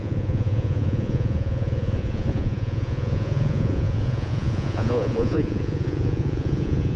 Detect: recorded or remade remade